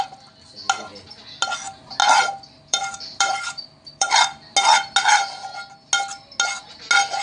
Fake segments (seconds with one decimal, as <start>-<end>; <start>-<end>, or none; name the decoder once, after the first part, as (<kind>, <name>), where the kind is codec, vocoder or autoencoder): 2.0-4.1 (vocoder, BigVGAN v2)